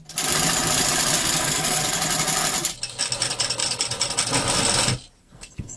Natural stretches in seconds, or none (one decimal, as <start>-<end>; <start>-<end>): 0.0-1.2; 1.8-5.2